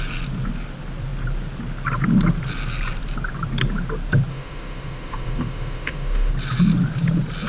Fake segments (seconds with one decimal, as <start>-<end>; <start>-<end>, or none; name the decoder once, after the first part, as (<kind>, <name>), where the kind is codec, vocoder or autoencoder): 4.3-6.3 (autoencoder, DAC-VAE)